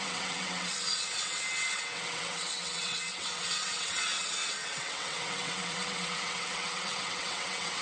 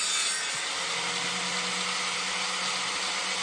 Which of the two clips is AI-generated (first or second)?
first